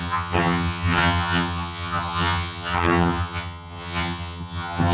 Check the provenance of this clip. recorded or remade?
remade